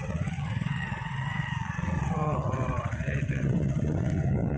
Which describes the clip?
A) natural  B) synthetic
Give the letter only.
B